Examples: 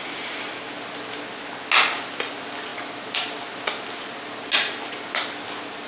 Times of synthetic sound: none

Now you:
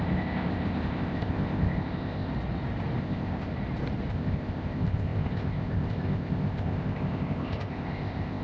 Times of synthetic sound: 0.0-2.3 (codec, ZipCodec); 3.0-3.5; 4.1-8.4

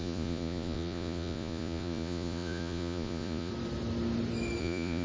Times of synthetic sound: 0.0-3.5 (vocoder, Vocos); 4.6-5.0